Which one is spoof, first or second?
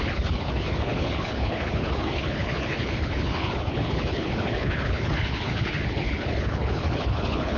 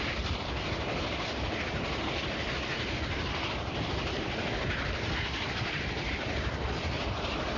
first